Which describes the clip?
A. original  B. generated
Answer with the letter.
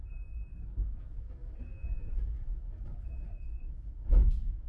B